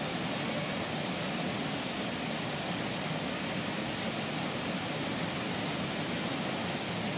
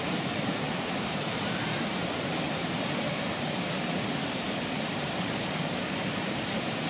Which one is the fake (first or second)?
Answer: second